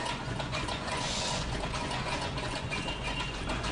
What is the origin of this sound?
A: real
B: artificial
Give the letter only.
B